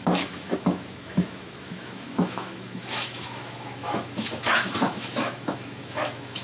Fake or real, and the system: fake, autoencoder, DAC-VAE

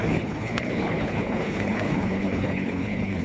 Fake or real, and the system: fake, codec, HILCodec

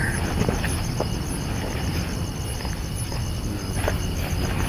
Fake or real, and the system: real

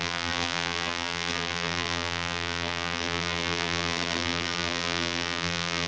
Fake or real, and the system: fake, vocoder, BigVGAN v2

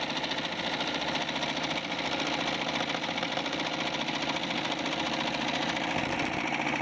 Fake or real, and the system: real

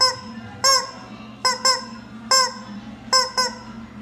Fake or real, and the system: real